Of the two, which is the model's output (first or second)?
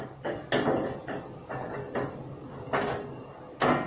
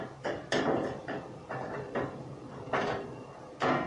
second